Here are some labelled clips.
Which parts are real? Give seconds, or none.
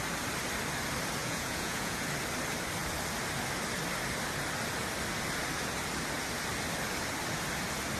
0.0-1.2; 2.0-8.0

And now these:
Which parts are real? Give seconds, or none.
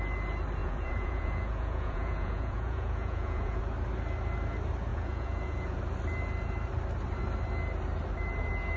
0.0-0.6; 3.6-4.9; 5.8-8.8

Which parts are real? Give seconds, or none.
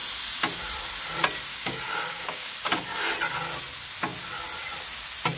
0.0-1.5; 2.8-5.4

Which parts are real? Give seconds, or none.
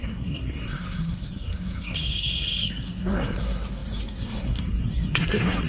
none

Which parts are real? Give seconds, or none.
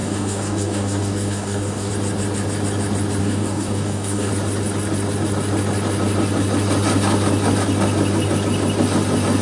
1.9-3.2; 4.3-9.4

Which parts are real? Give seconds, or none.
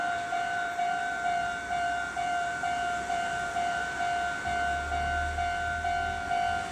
4.0-6.7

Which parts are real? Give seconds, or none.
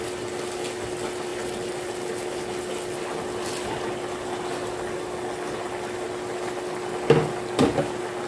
0.0-8.3